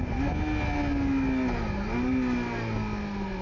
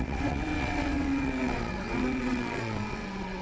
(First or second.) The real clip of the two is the first